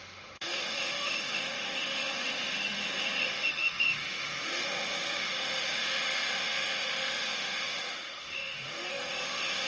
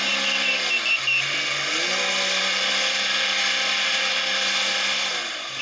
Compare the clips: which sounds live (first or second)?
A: second